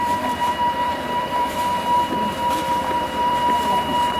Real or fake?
fake